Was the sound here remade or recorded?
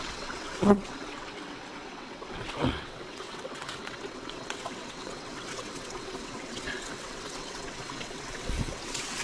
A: remade